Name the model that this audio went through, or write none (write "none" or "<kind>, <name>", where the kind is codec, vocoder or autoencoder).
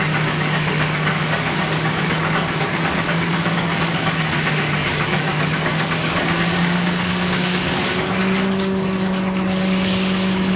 codec, DAC